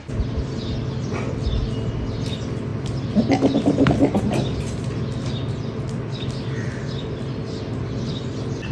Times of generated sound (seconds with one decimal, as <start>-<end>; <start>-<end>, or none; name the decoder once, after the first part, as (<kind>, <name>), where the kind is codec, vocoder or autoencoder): none